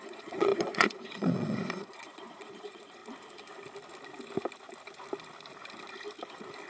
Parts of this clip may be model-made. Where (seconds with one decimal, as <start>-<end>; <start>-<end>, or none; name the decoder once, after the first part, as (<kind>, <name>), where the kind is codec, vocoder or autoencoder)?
0.0-3.0 (vocoder, Vocos)